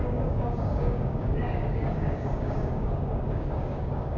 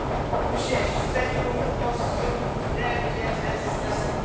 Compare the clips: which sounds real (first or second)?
second